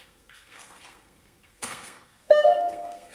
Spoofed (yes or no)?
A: yes